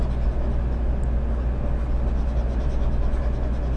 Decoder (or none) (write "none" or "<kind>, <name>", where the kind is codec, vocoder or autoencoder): none